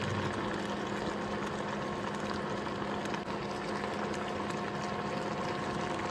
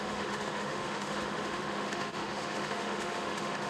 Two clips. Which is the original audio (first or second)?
first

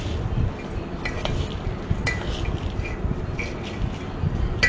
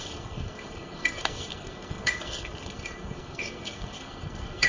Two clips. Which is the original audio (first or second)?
first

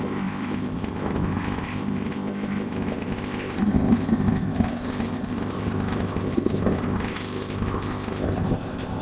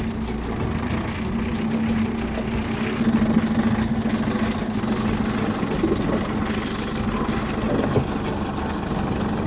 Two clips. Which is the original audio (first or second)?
second